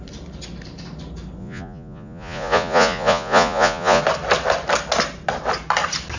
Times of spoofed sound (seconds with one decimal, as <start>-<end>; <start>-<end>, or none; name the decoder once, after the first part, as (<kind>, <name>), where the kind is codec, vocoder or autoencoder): 1.4-4.0 (vocoder, Vocos)